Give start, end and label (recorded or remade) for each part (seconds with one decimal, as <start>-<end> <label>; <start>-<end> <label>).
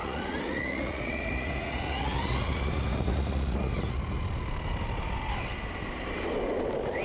0.0-4.2 remade; 4.2-7.0 recorded